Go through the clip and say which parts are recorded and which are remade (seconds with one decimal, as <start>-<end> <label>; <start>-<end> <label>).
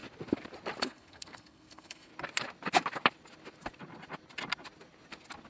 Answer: 0.0-0.8 recorded; 0.8-2.1 remade; 2.1-5.5 recorded